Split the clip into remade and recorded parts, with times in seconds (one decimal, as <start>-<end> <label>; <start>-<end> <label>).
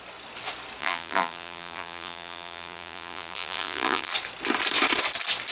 0.0-0.8 recorded; 0.8-4.1 remade; 4.1-5.5 recorded